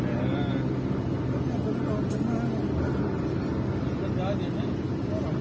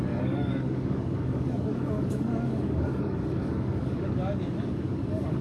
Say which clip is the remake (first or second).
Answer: second